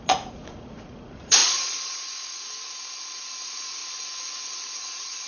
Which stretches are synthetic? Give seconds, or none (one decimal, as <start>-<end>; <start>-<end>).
0.0-1.4; 3.4-3.8; 4.4-5.3